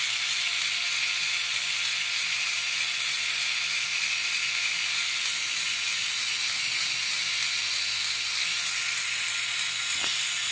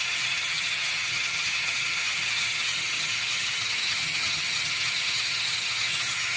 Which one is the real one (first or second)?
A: first